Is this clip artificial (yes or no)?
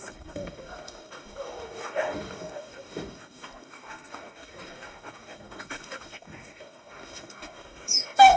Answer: yes